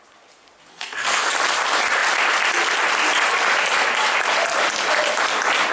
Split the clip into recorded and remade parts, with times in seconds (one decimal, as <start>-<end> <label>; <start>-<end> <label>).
0.0-0.7 recorded; 0.7-1.3 remade; 1.3-5.7 recorded